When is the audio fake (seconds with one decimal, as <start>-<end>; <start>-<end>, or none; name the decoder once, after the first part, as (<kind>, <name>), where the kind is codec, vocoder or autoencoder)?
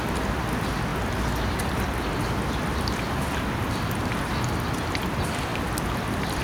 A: none